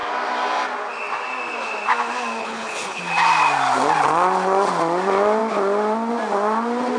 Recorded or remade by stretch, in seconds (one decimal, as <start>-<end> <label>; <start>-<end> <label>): 0.0-2.4 recorded; 2.4-3.0 remade; 3.0-7.0 recorded